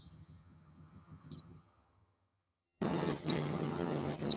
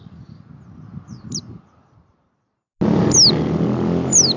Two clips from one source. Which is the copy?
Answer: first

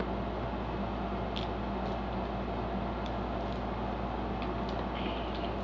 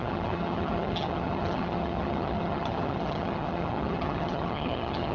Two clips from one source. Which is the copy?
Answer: second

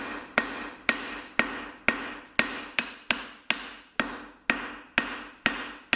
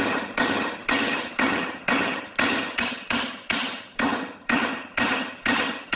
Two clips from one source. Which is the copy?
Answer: second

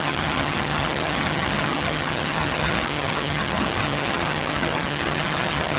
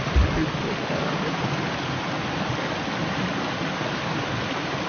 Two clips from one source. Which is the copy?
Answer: first